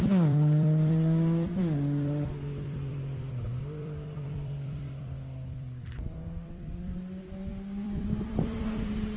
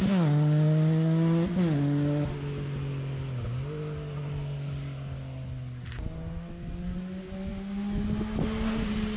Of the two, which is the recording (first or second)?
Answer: second